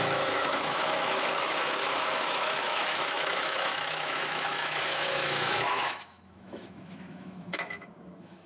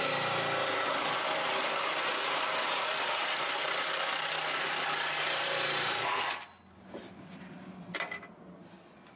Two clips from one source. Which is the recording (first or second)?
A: second